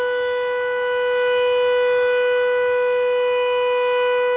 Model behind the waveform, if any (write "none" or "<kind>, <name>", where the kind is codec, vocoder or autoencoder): none